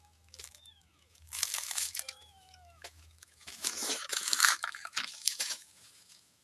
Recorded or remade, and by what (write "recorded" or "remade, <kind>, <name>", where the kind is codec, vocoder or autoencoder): remade, autoencoder, DAC-VAE